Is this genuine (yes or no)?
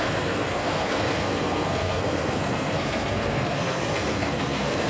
no